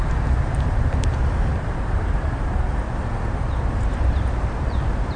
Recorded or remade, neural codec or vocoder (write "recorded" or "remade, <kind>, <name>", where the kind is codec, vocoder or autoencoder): remade, vocoder, BigVGAN v2